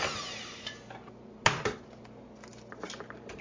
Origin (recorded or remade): recorded